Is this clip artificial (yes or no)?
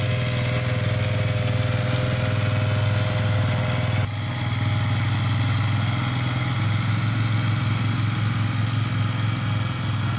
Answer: no